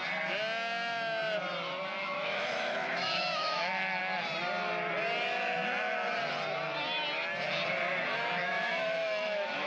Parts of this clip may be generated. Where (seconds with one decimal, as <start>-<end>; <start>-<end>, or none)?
2.0-4.0; 8.4-9.7